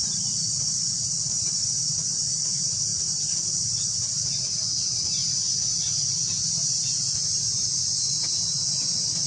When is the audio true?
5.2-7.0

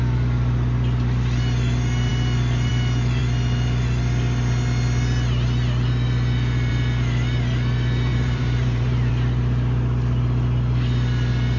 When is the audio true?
0.0-8.1; 9.1-11.6

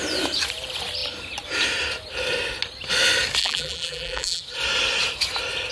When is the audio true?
0.0-3.4; 4.4-5.7